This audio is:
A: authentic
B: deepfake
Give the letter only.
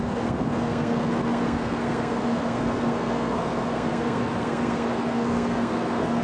B